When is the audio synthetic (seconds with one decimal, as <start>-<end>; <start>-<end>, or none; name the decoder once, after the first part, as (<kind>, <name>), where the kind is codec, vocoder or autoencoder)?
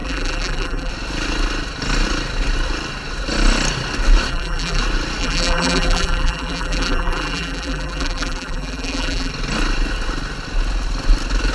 0.0-0.9 (vocoder, BigVGAN v2); 4.3-4.8; 5.2-9.3